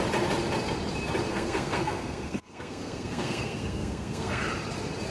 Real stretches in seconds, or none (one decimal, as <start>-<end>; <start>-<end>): 0.0-1.3; 4.4-5.1